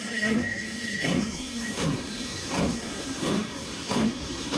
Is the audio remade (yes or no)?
yes